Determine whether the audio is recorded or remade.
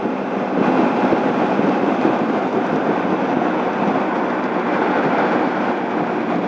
recorded